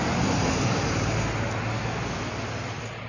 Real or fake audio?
real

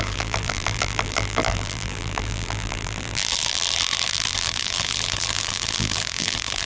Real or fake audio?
fake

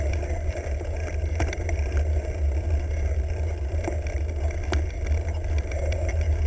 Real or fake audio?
real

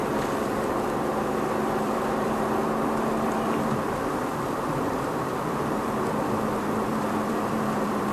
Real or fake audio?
fake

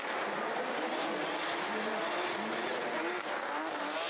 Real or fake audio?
real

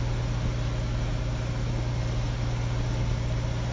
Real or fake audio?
real